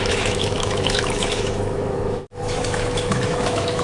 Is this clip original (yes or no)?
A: no